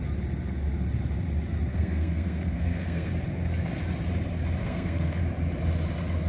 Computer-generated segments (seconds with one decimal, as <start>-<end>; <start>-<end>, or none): 1.7-3.1; 4.6-5.2